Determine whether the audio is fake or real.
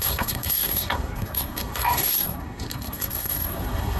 fake